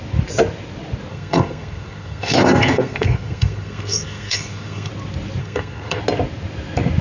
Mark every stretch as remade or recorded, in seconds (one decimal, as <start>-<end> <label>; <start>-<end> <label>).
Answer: 0.0-1.1 recorded; 1.1-4.9 remade; 4.9-5.4 recorded; 5.4-6.0 remade; 6.0-7.0 recorded